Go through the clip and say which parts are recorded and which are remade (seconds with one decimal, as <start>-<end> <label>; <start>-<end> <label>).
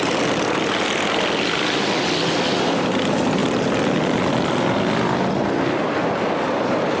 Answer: 0.0-7.0 recorded